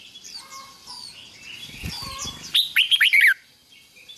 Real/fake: fake